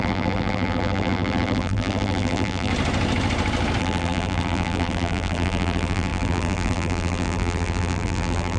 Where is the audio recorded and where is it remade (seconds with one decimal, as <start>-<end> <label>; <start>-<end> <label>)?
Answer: 0.0-2.7 remade; 2.7-3.8 recorded; 3.8-8.6 remade